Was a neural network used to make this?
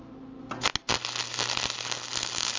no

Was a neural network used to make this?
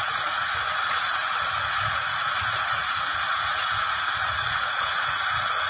yes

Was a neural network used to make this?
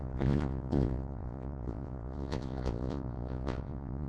yes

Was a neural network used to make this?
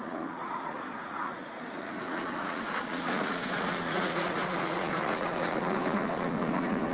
yes